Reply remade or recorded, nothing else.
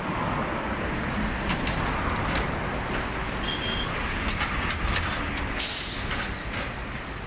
recorded